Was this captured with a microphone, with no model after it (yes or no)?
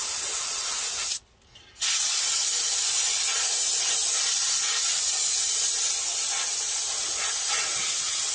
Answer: yes